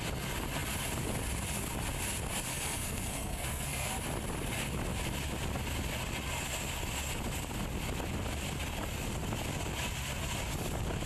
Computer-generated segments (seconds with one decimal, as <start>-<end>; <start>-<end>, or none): 2.5-3.9